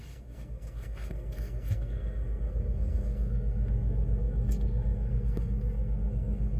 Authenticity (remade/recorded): remade